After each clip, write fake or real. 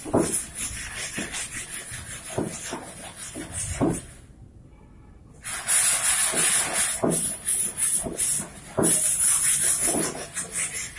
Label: real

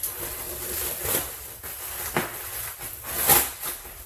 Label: real